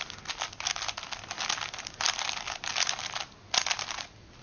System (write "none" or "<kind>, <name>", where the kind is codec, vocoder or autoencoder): none